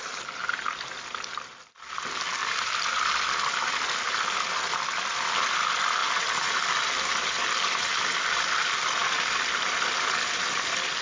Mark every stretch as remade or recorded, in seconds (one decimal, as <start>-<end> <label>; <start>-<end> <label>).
0.0-2.4 recorded; 2.4-5.6 remade; 5.6-6.0 recorded; 6.0-7.9 remade; 7.9-11.0 recorded